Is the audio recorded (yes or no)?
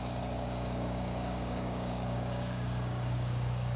no